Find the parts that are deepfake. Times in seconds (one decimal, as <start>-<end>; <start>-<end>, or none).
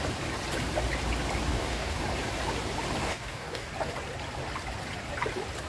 1.5-2.0; 3.0-3.7